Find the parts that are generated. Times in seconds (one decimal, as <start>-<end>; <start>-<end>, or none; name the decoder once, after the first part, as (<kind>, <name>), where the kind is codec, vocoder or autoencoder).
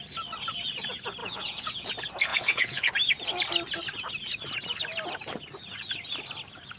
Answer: 1.2-1.9 (vocoder, Vocos); 2.3-2.9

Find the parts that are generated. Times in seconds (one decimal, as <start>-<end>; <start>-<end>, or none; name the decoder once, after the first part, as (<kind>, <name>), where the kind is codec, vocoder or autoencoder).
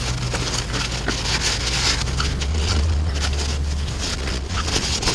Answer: 2.5-3.1 (vocoder, Vocos); 4.0-5.1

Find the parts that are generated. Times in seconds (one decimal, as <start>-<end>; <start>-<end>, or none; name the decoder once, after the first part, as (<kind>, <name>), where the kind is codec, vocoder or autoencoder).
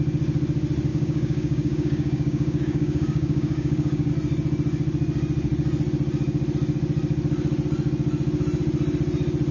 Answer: 0.9-4.1 (codec, DAC)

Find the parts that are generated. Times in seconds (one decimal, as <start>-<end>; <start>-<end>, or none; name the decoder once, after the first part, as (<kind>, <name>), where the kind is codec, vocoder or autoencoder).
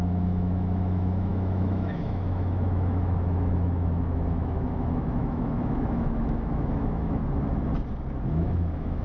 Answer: 0.0-7.2 (autoencoder, DAC-VAE); 8.3-9.0